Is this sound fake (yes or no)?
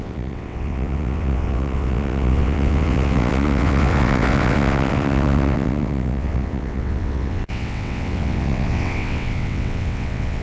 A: yes